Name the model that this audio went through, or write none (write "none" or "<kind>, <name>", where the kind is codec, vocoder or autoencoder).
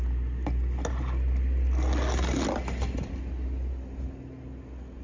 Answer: none